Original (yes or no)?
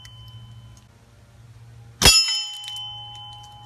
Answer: yes